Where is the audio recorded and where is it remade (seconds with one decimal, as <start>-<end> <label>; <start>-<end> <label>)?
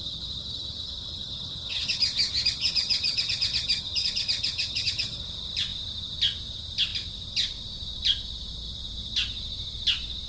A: 0.0-5.2 remade; 5.2-10.3 recorded